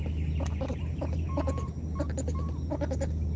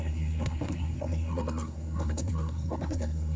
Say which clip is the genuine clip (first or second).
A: first